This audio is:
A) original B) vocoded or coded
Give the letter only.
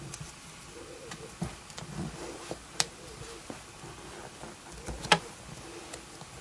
A